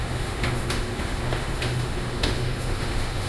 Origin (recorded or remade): remade